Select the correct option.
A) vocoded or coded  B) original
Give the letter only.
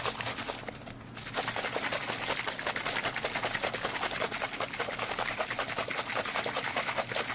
B